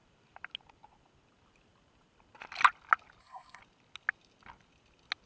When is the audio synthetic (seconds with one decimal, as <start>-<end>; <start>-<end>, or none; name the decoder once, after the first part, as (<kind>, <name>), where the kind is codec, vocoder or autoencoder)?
3.2-3.6 (codec, SNAC)